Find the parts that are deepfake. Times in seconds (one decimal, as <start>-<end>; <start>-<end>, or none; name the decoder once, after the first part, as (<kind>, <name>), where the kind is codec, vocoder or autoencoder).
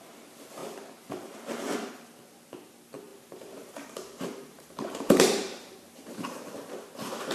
3.1-6.2 (vocoder, BigVGAN v2)